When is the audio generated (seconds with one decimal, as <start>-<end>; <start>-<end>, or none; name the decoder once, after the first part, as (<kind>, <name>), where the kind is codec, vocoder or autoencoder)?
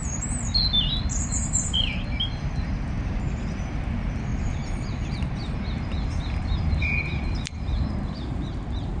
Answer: 0.0-2.1 (vocoder, BigVGAN v2); 4.3-9.0